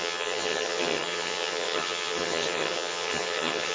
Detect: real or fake fake